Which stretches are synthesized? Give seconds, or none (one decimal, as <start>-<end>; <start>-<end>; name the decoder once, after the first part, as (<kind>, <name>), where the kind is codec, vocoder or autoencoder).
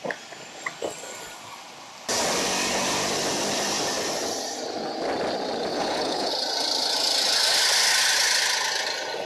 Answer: 5.7-6.3 (codec, HILCodec)